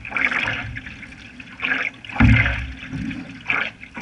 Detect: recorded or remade recorded